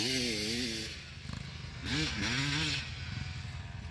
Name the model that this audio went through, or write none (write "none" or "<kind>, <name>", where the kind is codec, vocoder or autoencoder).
none